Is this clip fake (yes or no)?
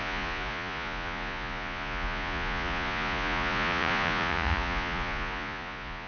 yes